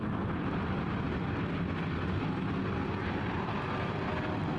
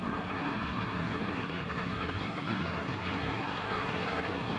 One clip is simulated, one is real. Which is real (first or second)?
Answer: first